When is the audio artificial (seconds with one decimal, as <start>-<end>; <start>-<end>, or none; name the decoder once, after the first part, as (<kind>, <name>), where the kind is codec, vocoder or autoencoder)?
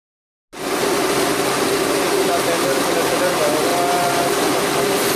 none